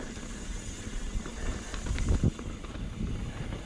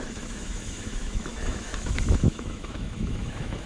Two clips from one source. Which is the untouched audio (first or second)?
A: first